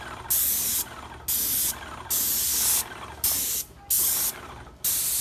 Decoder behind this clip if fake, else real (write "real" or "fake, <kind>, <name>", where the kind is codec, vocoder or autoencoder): real